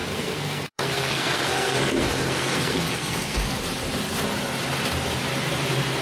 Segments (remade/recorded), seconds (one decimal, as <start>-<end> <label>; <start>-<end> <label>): 0.0-3.6 remade; 3.6-6.0 recorded